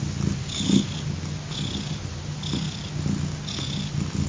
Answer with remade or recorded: recorded